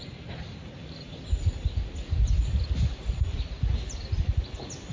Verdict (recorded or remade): recorded